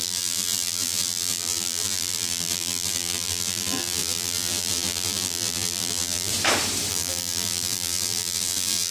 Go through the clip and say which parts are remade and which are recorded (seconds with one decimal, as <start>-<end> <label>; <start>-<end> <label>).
0.0-6.3 remade; 6.3-6.9 recorded; 6.9-8.9 remade